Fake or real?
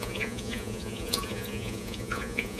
fake